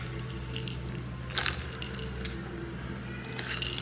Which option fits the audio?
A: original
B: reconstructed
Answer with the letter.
A